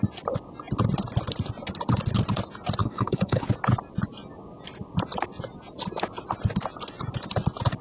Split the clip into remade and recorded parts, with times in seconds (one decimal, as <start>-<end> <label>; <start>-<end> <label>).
0.0-2.8 recorded; 2.8-3.4 remade; 3.4-7.8 recorded